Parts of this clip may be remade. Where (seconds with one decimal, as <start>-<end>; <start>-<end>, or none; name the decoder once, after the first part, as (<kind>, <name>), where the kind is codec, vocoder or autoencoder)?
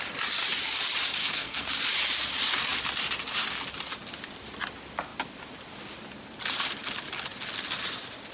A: 1.2-1.7 (codec, SNAC)